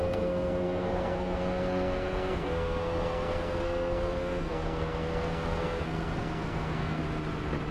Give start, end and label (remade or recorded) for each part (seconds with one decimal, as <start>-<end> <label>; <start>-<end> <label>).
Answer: 0.0-7.0 remade; 7.0-7.7 recorded